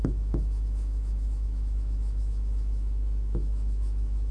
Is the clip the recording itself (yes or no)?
no